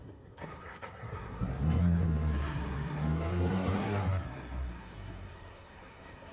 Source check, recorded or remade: remade